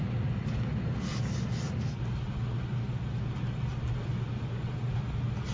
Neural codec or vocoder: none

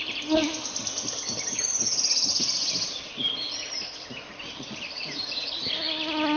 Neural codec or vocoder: none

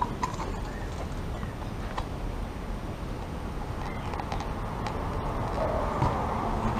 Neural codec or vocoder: none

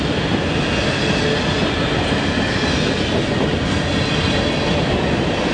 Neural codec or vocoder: none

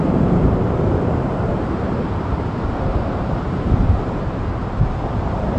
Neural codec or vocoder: vocoder, BigVGAN v2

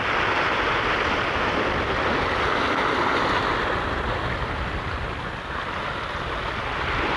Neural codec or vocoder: none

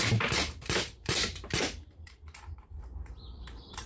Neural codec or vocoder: vocoder, BigVGAN v2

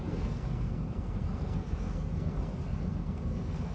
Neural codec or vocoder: codec, SNAC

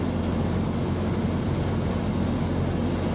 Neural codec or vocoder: none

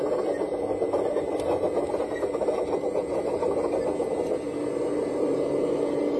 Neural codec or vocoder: none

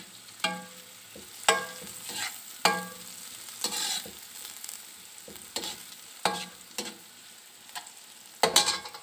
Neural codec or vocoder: none